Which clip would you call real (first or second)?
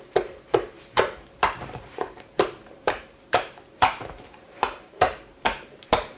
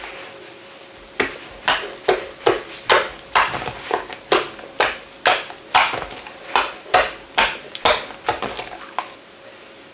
second